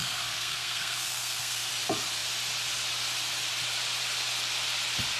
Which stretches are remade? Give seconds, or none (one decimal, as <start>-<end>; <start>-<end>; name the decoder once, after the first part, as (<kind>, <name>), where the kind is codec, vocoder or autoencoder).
0.0-1.7 (codec, SNAC)